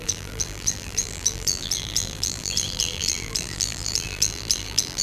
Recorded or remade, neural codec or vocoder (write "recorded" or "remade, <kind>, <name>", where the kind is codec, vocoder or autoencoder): remade, vocoder, BigVGAN v2